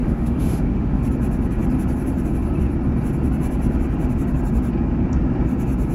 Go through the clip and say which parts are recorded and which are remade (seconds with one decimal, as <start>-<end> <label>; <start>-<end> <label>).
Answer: 0.0-1.0 remade; 1.0-5.9 recorded